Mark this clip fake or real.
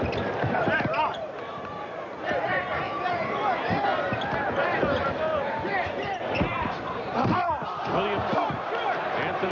real